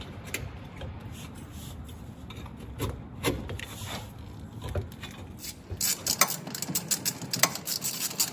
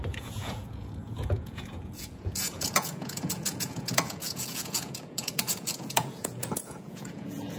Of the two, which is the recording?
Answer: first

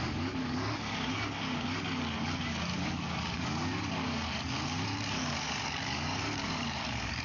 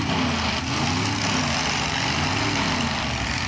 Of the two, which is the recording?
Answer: second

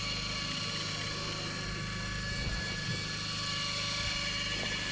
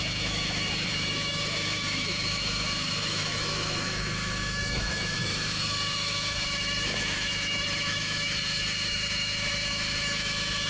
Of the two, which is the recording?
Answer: first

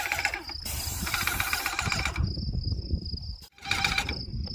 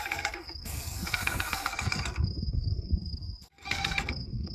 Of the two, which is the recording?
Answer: first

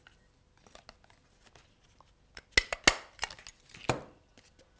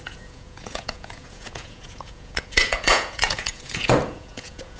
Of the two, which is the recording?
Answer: first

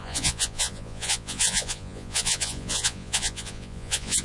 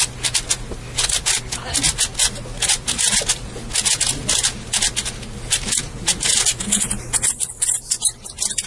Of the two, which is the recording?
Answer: second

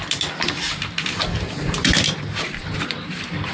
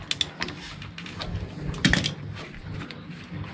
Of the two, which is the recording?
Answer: second